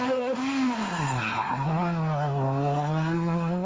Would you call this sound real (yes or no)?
no